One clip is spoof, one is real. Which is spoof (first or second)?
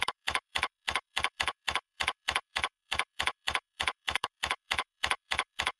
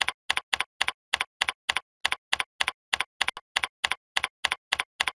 first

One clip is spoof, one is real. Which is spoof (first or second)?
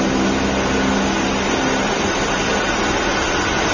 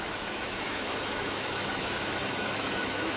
second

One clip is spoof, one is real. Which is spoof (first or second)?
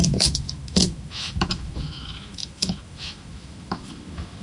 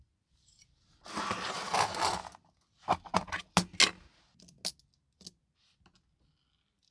first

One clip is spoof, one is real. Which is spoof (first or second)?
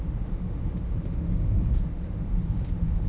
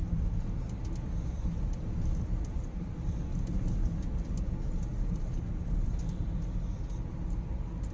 first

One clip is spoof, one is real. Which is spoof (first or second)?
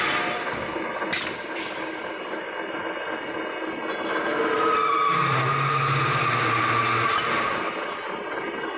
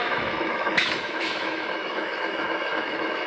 second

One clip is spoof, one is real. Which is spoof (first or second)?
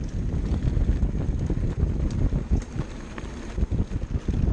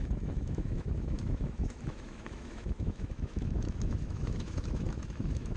second